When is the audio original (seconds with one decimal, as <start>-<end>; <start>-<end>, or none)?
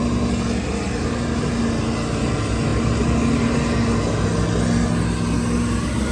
0.0-6.1